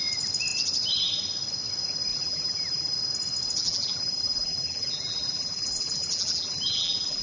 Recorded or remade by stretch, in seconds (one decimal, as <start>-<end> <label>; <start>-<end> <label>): 0.0-2.1 recorded; 2.1-2.9 remade; 2.9-3.6 recorded; 3.6-7.2 remade